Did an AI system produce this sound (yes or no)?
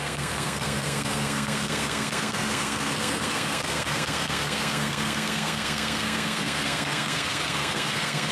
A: yes